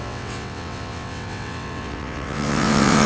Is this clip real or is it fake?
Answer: fake